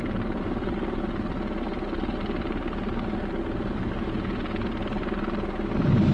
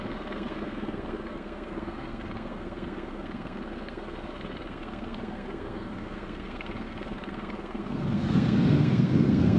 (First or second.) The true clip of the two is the first